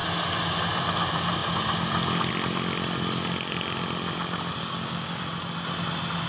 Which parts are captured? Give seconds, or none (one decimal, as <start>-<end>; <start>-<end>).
0.0-4.6; 5.2-6.3